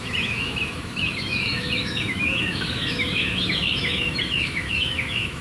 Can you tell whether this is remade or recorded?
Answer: remade